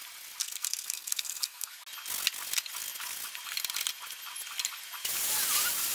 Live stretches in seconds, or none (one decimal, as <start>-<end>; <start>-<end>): 0.0-0.4; 1.7-5.9